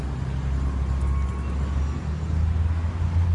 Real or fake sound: real